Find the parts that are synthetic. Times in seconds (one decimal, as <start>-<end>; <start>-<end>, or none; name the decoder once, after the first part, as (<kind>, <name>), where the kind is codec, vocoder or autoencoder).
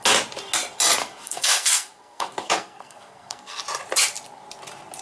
1.0-3.6 (codec, SNAC)